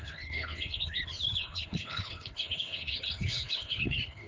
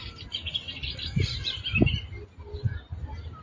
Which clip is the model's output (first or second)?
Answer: first